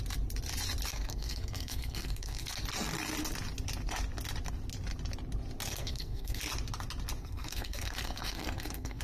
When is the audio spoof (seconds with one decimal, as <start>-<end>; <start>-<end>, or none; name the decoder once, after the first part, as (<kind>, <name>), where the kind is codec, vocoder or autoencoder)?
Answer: 0.9-2.5 (codec, SNAC); 5.7-6.4; 7.2-9.0